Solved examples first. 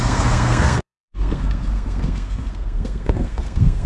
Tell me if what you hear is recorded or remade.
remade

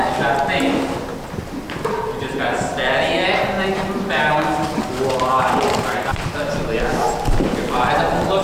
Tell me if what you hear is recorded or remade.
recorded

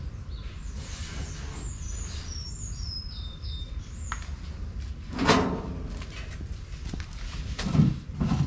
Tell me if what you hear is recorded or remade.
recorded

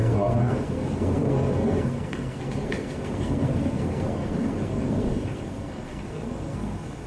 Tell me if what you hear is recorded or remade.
remade